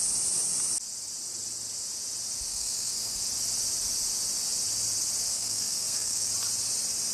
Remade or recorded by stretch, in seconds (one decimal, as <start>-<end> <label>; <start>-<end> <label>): 0.0-2.5 recorded; 2.5-3.2 remade; 3.2-5.3 recorded; 5.3-6.3 remade; 6.3-7.1 recorded